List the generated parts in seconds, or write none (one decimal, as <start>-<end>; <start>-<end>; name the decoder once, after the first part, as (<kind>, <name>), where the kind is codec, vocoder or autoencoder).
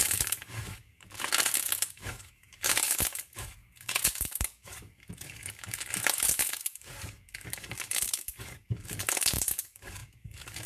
0.0-10.7 (codec, DAC)